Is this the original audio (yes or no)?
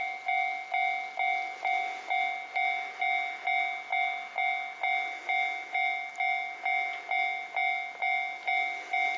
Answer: yes